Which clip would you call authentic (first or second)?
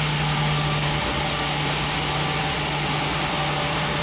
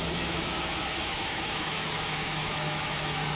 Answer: first